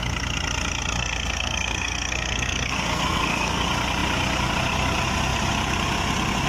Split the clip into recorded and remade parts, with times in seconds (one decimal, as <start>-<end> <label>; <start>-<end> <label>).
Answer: 0.0-1.0 recorded; 1.0-3.6 remade; 3.6-6.5 recorded